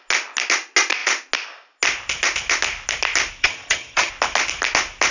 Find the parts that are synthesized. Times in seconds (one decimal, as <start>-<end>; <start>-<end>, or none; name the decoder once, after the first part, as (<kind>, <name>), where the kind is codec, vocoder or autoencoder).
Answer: 3.4-4.1 (vocoder, HiFi-GAN)